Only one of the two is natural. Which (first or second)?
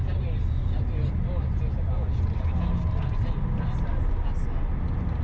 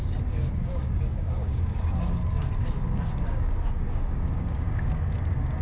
first